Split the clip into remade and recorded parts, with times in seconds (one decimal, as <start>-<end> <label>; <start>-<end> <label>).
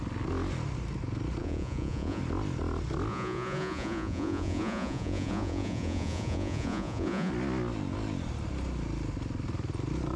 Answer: 0.0-1.4 recorded; 1.4-2.2 remade; 2.2-3.1 recorded; 3.1-7.3 remade; 7.3-10.2 recorded